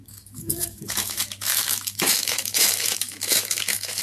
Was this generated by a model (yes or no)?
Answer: yes